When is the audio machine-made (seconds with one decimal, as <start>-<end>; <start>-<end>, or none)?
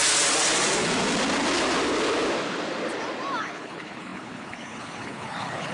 3.4-5.7